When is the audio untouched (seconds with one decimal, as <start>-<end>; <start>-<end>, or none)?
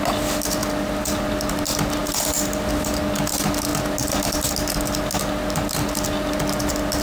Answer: 0.0-7.0